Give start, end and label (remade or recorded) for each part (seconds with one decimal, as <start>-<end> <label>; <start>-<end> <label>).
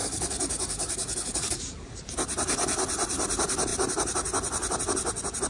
0.0-2.0 remade; 2.0-5.5 recorded